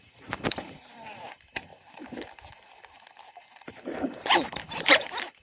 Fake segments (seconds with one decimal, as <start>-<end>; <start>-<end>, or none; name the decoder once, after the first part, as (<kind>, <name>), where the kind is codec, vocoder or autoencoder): 0.0-1.7 (vocoder, BigVGAN v2); 3.4-5.4